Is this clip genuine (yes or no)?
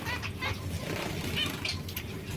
yes